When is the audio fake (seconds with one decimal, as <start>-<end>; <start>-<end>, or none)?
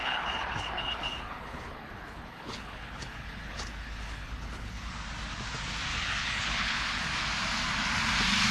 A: 0.0-4.9; 5.9-7.0